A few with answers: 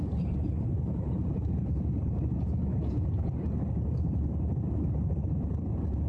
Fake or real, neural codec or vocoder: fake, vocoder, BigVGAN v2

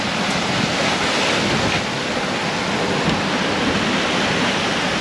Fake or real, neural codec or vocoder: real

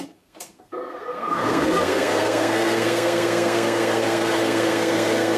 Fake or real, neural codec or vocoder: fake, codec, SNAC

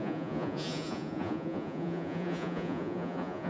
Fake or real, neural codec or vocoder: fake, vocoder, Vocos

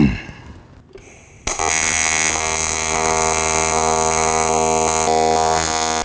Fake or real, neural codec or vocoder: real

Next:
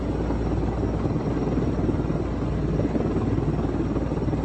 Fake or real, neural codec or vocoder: real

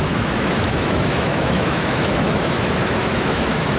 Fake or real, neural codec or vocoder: fake, autoencoder, DAC-VAE